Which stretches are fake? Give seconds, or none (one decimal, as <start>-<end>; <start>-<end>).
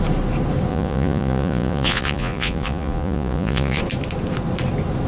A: 0.7-3.8